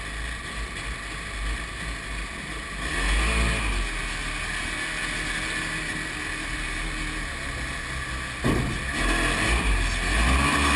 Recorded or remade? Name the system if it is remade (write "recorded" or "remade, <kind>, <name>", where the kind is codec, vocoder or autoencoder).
recorded